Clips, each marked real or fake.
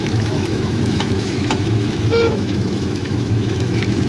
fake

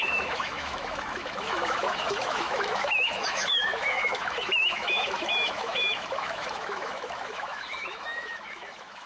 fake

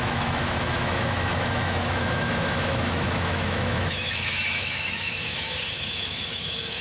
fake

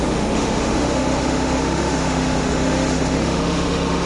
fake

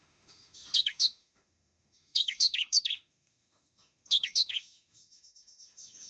fake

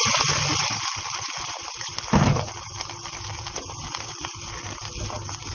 real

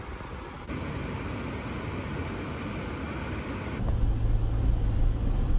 real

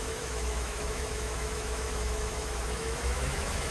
fake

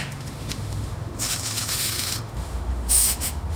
fake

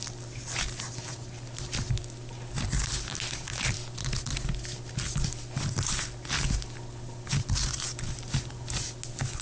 real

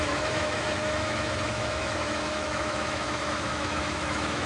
fake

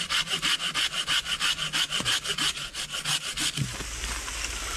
real